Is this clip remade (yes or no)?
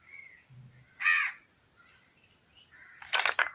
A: no